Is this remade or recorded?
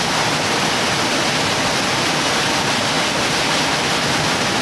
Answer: recorded